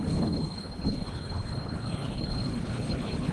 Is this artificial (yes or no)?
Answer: yes